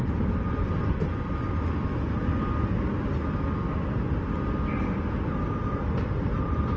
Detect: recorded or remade recorded